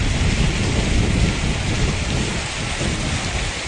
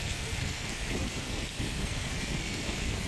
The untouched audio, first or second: first